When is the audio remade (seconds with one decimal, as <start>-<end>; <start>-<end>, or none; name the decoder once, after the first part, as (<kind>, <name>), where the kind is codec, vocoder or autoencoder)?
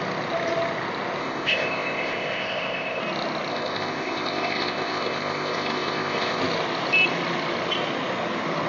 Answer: 1.2-3.0 (codec, ZipCodec); 3.5-6.4